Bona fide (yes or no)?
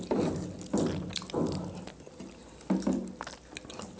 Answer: yes